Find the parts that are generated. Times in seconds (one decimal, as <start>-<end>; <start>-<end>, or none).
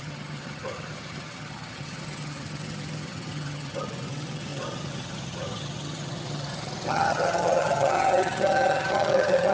0.0-9.5